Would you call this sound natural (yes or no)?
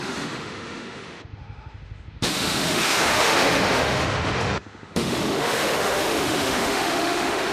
no